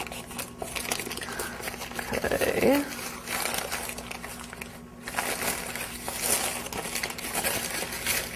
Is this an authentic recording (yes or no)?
yes